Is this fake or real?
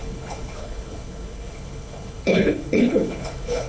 fake